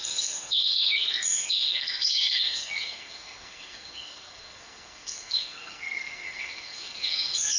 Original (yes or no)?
no